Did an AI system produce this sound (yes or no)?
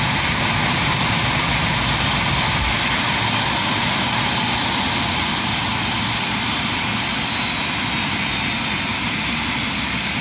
no